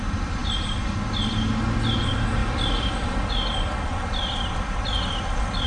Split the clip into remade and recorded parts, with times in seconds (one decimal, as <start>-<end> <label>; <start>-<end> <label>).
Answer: 0.0-2.4 recorded; 2.4-5.7 remade